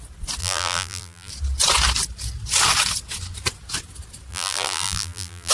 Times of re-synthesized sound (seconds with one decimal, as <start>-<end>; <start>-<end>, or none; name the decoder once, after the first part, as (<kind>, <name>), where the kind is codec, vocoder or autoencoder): 0.4-1.3 (vocoder, BigVGAN v2); 4.3-5.5